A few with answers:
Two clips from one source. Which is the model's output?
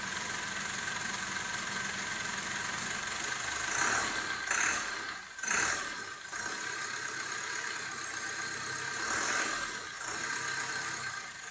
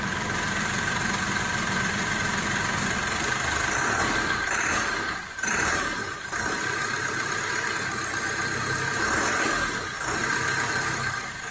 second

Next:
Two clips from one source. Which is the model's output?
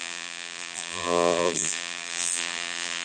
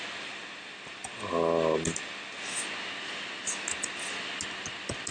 first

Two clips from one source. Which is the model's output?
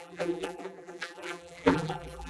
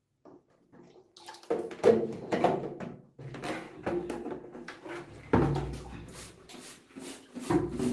first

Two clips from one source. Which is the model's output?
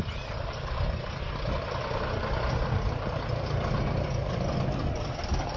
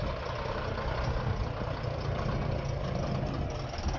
first